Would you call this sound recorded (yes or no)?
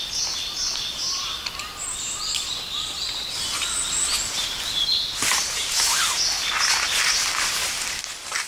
yes